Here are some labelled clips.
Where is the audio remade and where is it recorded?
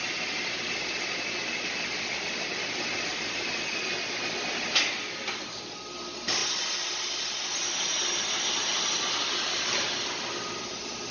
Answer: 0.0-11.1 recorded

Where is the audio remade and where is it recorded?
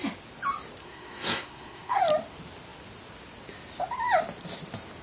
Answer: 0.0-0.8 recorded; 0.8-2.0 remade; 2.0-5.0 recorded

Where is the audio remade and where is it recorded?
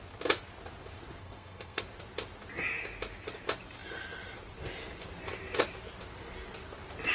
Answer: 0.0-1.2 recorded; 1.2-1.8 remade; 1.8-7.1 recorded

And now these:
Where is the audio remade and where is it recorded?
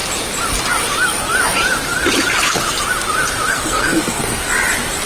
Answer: 0.0-3.5 recorded; 3.5-4.4 remade; 4.4-5.1 recorded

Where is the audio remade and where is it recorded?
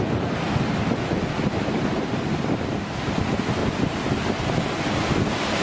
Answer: 0.0-5.6 recorded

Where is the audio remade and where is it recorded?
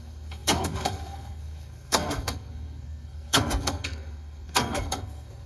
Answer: 0.0-5.5 remade